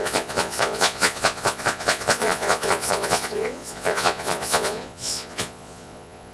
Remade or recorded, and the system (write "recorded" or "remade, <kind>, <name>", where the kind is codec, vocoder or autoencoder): remade, vocoder, Vocos